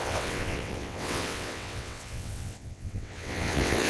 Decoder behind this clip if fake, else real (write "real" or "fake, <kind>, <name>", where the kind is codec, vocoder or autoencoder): fake, vocoder, WaveNeXt